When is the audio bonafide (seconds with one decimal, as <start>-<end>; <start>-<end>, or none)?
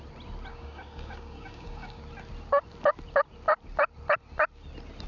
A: 0.0-0.5; 2.0-5.1